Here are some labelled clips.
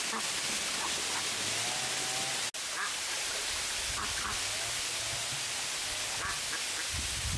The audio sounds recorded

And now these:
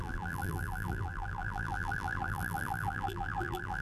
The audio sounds remade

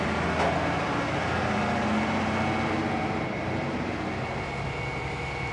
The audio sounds recorded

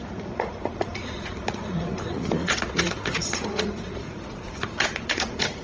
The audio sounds remade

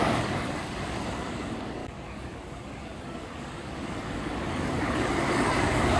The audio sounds remade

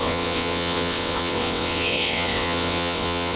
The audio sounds remade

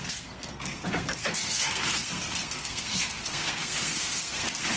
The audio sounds remade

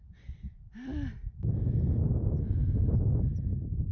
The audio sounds recorded